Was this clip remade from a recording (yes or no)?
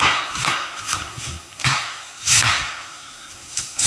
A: yes